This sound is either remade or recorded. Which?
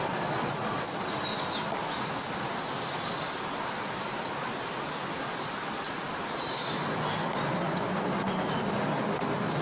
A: recorded